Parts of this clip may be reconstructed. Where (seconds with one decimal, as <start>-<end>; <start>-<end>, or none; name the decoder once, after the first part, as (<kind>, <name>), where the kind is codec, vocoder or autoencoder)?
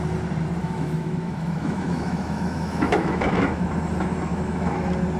0.6-3.7 (autoencoder, DAC-VAE); 4.3-4.8